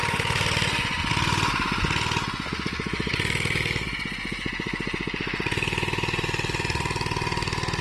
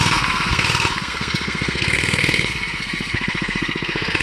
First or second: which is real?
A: first